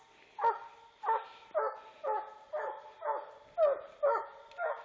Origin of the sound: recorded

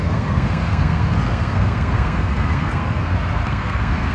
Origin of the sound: remade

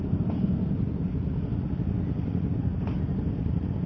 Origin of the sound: recorded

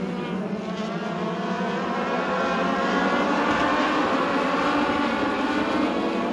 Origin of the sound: recorded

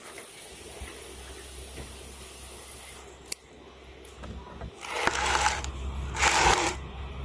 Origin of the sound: recorded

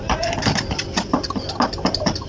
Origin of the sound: recorded